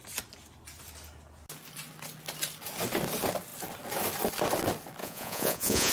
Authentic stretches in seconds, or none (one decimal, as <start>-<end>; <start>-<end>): 0.0-5.0